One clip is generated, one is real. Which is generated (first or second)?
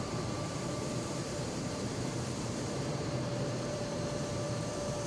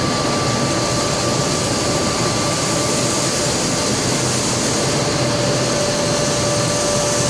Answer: first